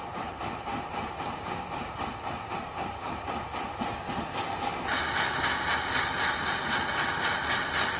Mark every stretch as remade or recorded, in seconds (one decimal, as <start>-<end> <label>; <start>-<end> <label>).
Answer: 0.0-3.2 remade; 3.2-8.0 recorded